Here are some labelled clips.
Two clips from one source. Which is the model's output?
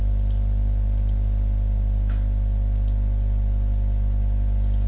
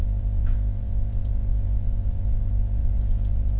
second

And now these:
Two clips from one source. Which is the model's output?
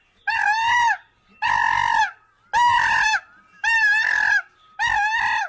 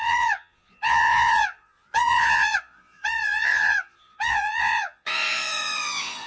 second